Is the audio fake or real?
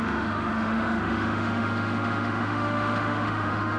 fake